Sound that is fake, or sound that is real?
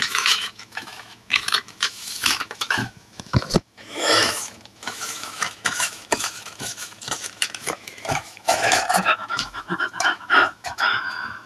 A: fake